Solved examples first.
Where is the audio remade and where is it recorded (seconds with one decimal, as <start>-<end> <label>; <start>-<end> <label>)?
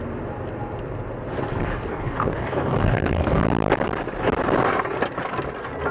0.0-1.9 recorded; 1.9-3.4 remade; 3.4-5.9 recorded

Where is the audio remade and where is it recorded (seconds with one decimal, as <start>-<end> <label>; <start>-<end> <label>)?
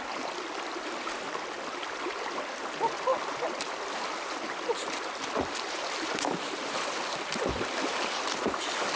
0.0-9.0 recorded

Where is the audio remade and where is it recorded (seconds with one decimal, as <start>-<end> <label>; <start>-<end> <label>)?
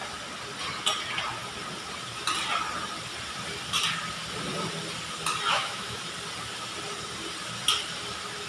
0.0-5.5 recorded; 5.5-6.0 remade; 6.0-8.5 recorded